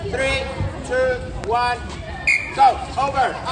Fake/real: real